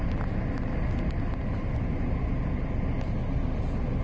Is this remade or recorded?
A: recorded